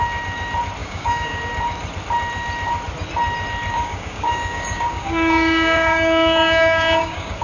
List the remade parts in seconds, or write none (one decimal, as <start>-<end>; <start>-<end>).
0.8-1.4; 3.7-7.4